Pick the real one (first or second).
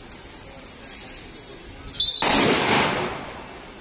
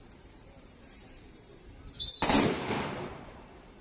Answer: first